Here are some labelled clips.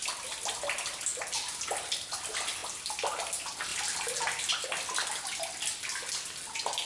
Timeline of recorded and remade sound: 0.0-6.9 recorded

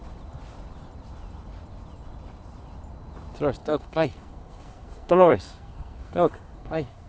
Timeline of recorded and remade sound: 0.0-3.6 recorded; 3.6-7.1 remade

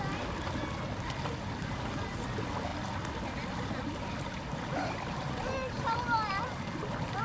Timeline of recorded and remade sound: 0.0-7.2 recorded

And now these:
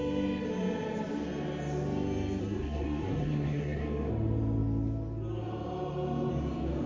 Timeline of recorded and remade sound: 0.0-2.4 recorded; 2.4-4.1 remade; 4.1-6.9 recorded

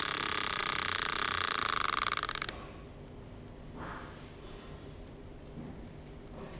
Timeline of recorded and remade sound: 0.0-6.6 recorded

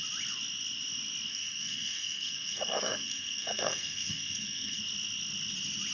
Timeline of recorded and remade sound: 0.0-1.3 recorded; 1.3-4.8 remade; 4.8-5.9 recorded